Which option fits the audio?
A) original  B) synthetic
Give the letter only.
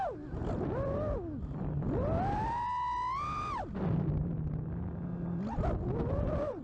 A